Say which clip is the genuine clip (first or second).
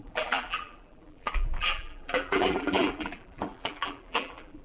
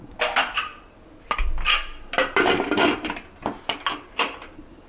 second